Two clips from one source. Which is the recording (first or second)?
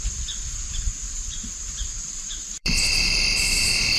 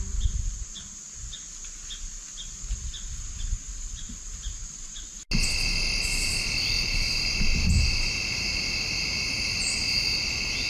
second